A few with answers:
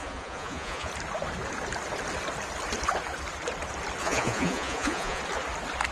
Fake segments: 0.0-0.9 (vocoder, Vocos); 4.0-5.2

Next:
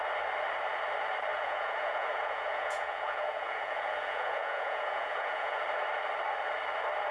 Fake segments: 1.3-5.6 (vocoder, Vocos)

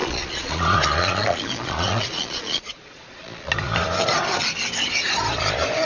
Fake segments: 0.0-3.5 (vocoder, Vocos)